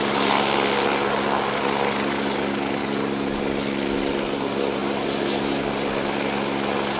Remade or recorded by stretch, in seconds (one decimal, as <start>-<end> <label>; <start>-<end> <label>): 0.0-7.0 recorded